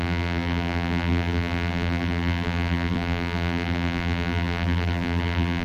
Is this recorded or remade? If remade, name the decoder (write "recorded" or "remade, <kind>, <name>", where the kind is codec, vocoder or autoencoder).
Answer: remade, vocoder, BigVGAN v2